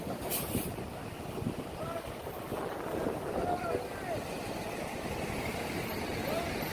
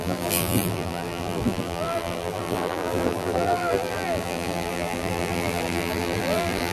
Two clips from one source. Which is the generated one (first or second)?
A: second